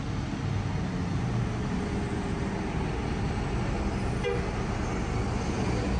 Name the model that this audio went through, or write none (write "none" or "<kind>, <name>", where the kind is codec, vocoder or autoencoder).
none